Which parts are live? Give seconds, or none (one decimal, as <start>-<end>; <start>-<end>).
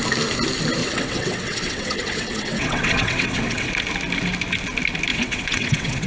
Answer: 0.0-0.8; 3.7-5.1